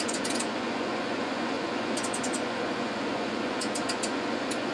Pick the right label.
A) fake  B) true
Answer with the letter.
A